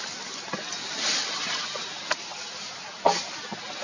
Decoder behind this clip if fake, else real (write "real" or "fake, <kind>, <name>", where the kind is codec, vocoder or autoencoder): real